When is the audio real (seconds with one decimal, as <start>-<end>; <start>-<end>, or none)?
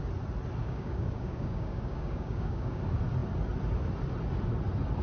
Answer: 0.0-0.6; 2.8-5.0